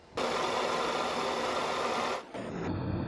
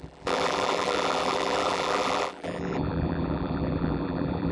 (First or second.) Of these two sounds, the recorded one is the first